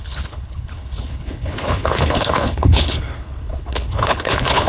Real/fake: fake